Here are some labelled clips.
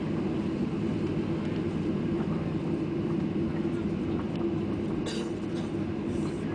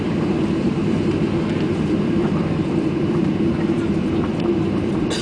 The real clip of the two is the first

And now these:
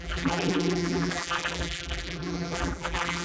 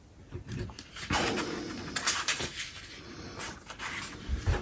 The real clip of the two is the second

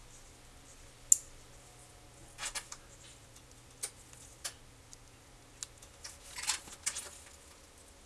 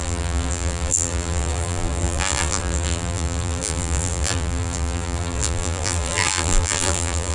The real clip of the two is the first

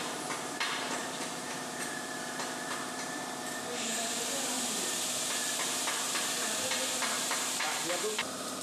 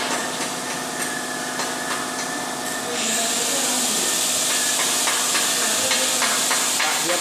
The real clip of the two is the second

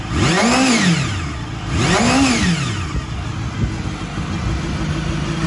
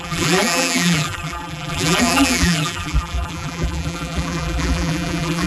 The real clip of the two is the first